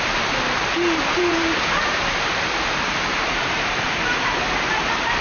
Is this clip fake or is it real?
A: fake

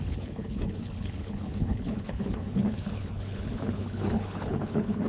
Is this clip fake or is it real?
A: fake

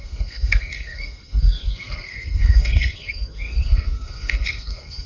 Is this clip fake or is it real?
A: fake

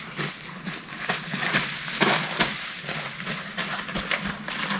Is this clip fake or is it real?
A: real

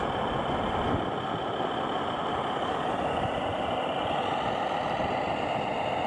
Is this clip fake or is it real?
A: real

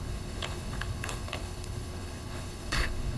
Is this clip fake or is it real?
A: fake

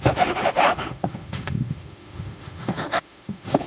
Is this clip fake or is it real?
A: fake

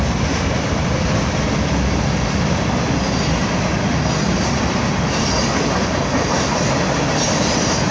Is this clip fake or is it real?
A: real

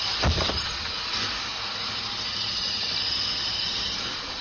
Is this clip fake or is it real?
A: real